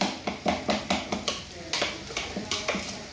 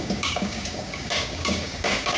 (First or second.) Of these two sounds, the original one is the first